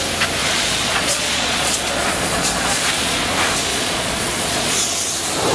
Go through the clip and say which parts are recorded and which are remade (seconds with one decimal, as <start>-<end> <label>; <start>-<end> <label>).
0.0-0.4 recorded; 0.4-3.3 remade; 3.3-3.7 recorded; 3.7-4.9 remade; 4.9-5.5 recorded